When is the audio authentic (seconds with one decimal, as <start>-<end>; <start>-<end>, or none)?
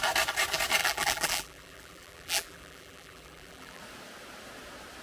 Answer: 0.0-0.8; 3.8-5.0